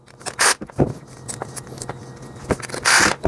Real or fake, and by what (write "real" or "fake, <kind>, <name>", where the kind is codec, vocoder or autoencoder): real